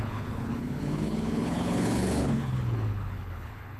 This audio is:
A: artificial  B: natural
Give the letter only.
A